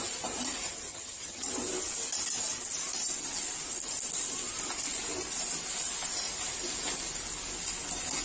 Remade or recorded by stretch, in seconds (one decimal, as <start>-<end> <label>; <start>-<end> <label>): 0.0-0.9 recorded; 0.9-1.5 remade; 1.5-8.2 recorded